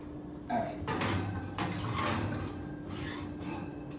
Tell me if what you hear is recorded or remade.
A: recorded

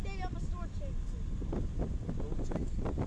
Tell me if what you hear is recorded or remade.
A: recorded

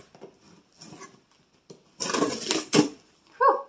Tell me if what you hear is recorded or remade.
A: recorded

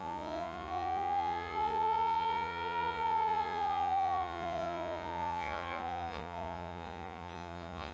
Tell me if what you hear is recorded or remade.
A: remade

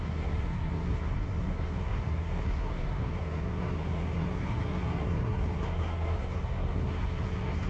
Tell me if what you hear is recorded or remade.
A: remade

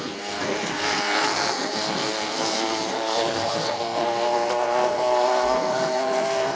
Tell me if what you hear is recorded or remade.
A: remade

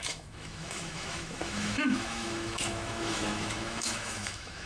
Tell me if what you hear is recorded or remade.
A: remade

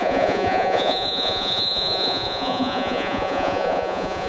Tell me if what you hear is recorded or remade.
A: remade